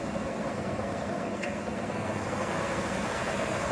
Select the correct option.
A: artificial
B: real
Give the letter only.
A